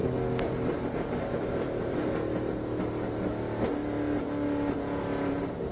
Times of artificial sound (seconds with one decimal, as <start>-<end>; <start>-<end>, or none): none